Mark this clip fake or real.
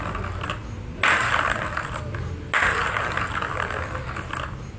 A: real